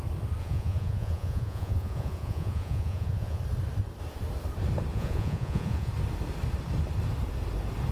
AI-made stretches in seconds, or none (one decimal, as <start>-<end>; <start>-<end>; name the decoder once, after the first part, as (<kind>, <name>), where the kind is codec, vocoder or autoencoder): 0.4-3.4 (vocoder, Vocos); 4.9-5.9